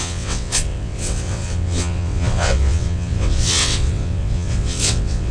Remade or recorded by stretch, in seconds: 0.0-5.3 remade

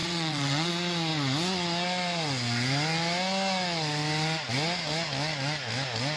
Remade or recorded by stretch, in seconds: 0.0-0.7 remade; 0.7-6.2 recorded

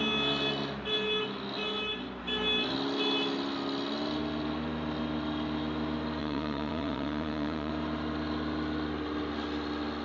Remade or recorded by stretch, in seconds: 0.0-6.2 recorded; 6.2-7.7 remade; 7.7-10.0 recorded

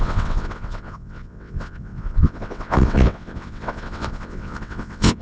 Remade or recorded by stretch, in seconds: 0.0-5.2 remade

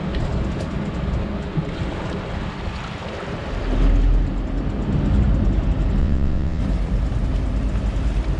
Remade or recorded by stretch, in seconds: 0.0-6.0 recorded; 6.0-6.6 remade; 6.6-8.4 recorded

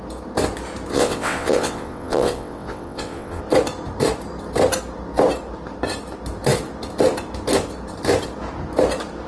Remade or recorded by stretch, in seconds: 0.0-0.9 recorded; 0.9-3.4 remade; 3.4-9.3 recorded

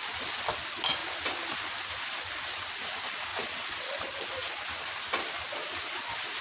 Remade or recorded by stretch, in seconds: 0.0-3.3 recorded; 3.3-4.0 remade; 4.0-6.4 recorded

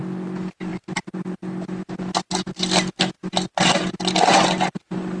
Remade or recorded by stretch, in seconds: 0.0-5.2 recorded